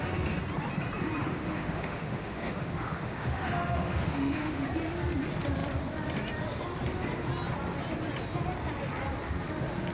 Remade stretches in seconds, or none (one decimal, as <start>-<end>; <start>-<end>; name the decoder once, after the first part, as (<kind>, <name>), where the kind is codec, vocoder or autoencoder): 1.2-4.7 (autoencoder, DAC-VAE)